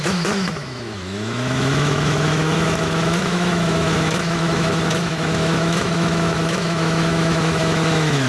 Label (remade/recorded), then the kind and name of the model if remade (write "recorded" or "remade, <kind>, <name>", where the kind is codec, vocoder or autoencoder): remade, autoencoder, DAC-VAE